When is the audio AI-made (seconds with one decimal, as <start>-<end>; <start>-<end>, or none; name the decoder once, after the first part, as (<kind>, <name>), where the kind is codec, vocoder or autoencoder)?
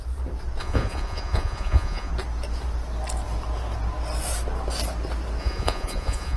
0.6-2.1 (vocoder, Vocos); 5.4-6.4